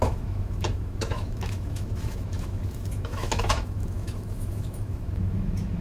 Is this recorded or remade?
remade